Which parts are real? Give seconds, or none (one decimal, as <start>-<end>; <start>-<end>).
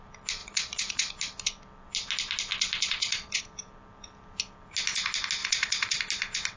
0.0-0.4; 1.1-2.5; 3.4-5.4; 6.0-6.6